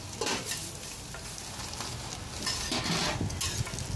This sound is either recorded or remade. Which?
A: recorded